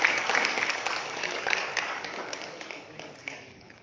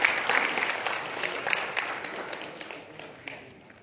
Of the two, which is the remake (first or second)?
first